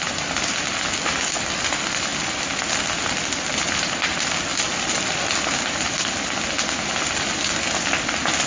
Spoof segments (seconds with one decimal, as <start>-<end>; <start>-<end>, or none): none